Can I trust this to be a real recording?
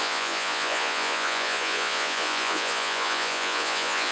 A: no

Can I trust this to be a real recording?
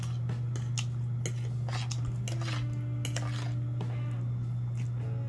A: yes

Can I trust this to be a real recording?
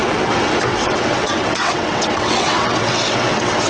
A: no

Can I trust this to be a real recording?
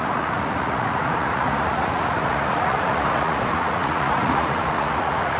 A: no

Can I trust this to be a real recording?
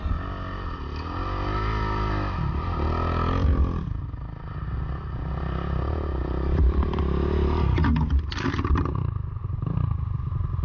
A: yes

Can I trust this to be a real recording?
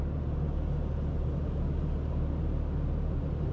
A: yes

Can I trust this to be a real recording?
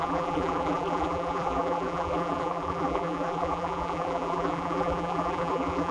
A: no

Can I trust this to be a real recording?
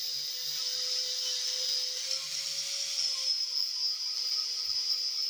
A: yes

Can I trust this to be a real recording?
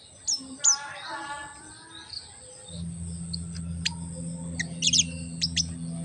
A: yes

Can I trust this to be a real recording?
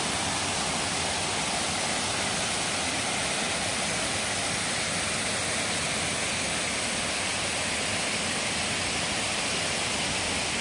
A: yes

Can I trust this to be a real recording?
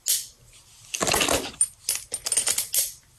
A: yes